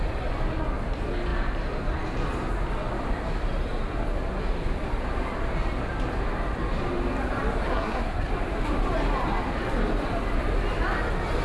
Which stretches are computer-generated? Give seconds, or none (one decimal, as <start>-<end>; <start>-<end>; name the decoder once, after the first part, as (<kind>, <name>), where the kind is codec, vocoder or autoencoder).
7.7-8.3 (codec, SNAC)